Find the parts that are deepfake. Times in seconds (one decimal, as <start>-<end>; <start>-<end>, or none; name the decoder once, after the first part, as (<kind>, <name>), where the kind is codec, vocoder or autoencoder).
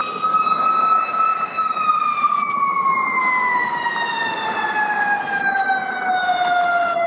none